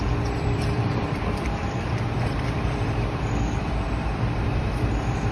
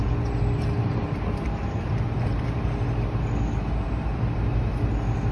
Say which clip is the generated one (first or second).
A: first